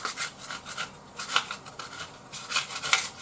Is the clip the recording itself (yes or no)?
yes